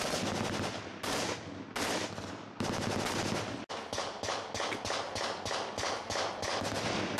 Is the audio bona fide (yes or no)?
yes